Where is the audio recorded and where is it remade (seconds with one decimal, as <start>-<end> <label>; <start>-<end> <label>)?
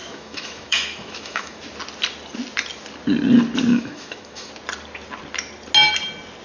0.0-1.6 remade; 1.6-3.7 recorded; 3.7-4.5 remade; 4.5-6.4 recorded